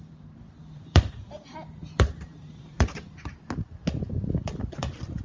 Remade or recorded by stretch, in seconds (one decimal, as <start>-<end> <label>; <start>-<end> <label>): 0.0-2.9 remade; 2.9-4.1 recorded; 4.1-5.2 remade